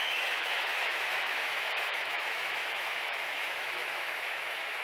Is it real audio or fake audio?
fake